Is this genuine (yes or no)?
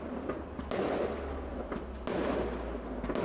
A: yes